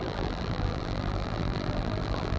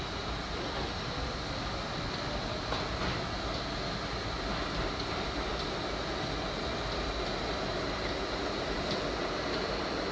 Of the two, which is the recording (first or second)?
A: second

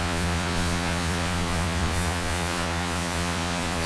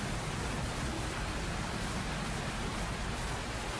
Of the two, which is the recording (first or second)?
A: second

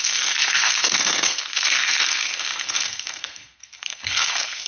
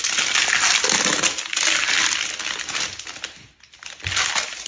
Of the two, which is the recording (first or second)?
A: second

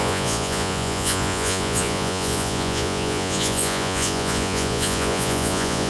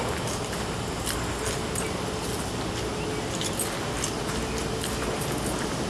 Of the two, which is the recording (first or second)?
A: second